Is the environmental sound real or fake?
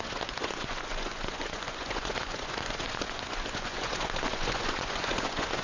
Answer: fake